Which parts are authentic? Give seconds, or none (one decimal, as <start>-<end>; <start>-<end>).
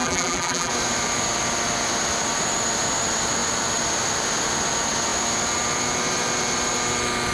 0.7-7.3